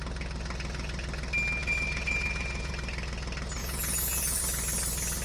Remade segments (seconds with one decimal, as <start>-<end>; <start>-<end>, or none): 1.6-2.7; 3.6-4.4